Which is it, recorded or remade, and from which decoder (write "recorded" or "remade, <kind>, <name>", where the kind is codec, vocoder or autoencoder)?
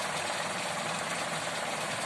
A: remade, vocoder, BigVGAN v2